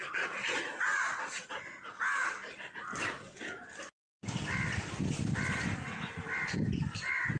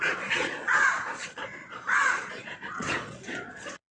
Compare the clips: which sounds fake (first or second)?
second